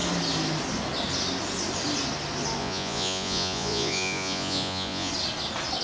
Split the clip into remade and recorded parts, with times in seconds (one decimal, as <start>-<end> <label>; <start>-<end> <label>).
0.0-2.6 recorded; 2.6-5.1 remade; 5.1-5.8 recorded